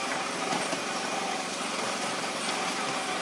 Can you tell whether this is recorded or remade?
remade